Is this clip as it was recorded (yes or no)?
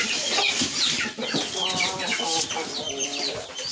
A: yes